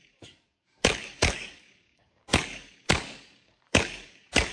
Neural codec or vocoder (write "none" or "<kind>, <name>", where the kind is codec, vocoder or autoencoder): codec, DAC